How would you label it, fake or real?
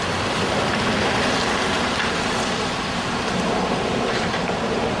real